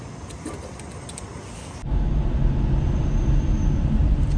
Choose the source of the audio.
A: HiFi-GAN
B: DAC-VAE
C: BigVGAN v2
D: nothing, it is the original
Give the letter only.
D